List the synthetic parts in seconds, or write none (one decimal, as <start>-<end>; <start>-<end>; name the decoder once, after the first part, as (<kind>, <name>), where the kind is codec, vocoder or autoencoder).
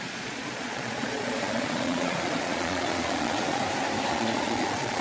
0.0-3.6 (vocoder, Vocos); 4.1-5.0